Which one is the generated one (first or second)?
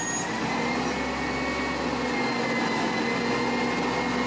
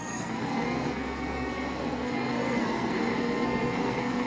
second